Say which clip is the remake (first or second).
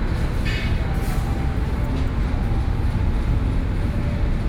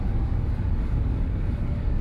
second